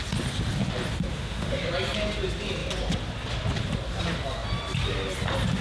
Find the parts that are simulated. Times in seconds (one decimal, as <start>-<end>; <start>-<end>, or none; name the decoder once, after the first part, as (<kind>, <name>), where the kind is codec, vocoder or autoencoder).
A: 1.1-1.7 (autoencoder, DAC-VAE)